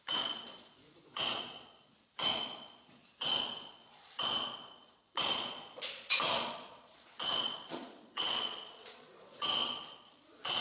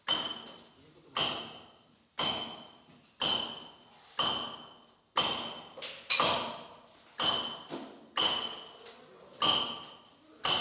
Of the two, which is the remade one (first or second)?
first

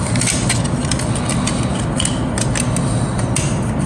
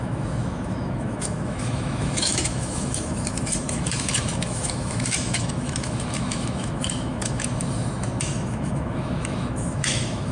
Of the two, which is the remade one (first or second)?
second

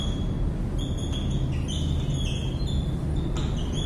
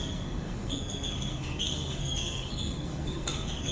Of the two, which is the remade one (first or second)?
second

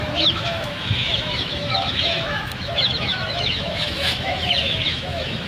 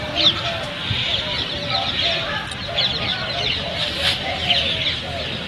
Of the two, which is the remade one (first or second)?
first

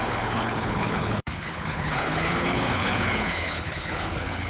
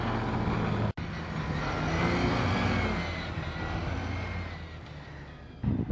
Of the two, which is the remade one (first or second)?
first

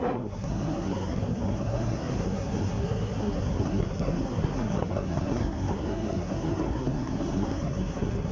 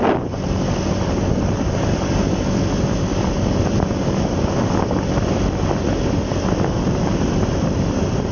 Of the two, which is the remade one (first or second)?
first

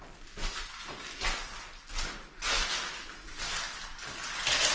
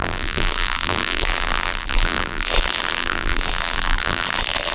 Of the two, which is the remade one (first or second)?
second